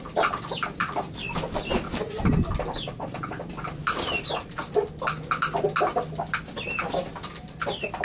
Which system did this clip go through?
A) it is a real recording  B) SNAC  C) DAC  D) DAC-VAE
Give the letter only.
A